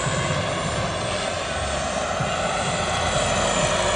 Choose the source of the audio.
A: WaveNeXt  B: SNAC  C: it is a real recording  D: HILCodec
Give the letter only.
C